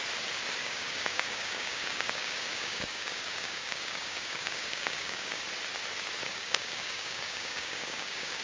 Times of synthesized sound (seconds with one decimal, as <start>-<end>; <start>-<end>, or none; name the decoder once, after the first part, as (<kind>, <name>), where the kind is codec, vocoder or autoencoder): 0.6-5.4 (codec, DAC); 6.2-8.4